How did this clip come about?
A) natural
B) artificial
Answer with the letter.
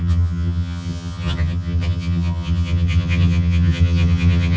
B